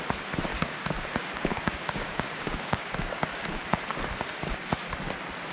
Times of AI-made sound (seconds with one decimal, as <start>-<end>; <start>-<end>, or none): 0.5-3.8